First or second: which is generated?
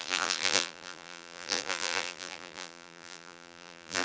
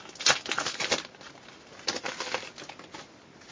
first